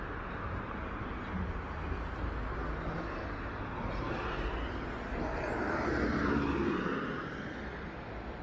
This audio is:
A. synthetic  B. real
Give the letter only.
B